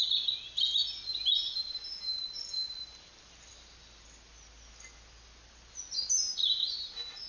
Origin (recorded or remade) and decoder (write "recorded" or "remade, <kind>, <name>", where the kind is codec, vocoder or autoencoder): recorded